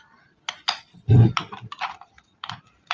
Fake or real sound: fake